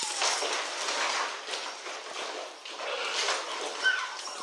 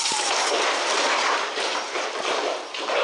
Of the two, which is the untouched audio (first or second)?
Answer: first